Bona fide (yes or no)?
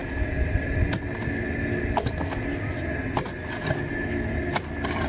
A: yes